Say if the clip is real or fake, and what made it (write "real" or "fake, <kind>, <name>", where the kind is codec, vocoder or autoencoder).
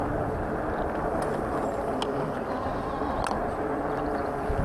real